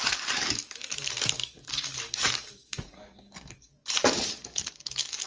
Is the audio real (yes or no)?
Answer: no